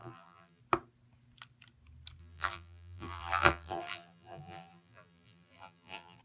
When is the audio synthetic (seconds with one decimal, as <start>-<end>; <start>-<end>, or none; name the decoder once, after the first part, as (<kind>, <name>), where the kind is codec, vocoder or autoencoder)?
0.0-0.6 (vocoder, BigVGAN v2); 2.2-6.2

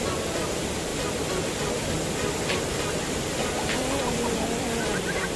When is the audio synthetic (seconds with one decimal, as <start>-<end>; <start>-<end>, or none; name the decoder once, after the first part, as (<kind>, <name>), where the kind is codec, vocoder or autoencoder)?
0.0-0.9 (vocoder, BigVGAN v2); 4.0-5.4

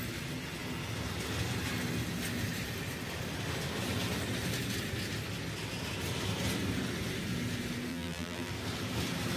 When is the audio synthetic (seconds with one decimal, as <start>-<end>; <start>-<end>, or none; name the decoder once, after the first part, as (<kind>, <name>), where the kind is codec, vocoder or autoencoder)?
7.9-8.5 (vocoder, BigVGAN v2)

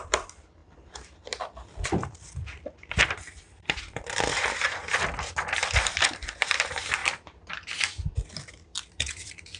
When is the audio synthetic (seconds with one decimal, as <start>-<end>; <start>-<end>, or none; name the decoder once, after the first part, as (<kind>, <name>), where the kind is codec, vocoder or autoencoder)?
0.0-5.6 (vocoder, BigVGAN v2); 6.1-9.6

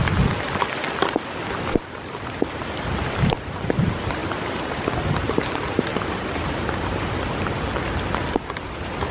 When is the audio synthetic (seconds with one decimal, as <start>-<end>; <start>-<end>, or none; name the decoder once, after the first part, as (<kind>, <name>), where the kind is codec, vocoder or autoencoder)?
4.2-4.7 (vocoder, BigVGAN v2); 5.9-6.7

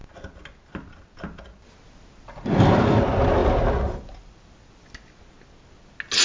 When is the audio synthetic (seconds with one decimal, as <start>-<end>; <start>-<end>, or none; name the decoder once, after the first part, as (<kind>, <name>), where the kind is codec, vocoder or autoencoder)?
3.4-4.8 (vocoder, BigVGAN v2)

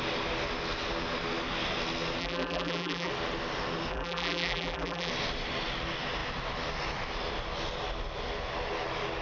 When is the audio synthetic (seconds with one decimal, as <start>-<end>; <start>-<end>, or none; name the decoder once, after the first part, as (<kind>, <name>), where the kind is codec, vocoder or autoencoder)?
2.2-3.1 (vocoder, BigVGAN v2); 3.9-5.1

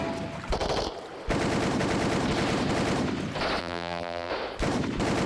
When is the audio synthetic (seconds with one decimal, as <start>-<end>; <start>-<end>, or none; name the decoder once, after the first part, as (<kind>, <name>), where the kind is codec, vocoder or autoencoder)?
3.6-4.3 (vocoder, BigVGAN v2)